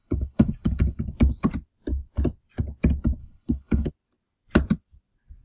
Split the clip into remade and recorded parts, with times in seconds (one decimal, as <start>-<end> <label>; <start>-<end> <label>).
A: 0.0-1.0 remade; 1.0-3.2 recorded; 3.2-3.9 remade; 3.9-5.4 recorded